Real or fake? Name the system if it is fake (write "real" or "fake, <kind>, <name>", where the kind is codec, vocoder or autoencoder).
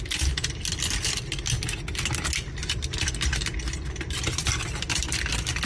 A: real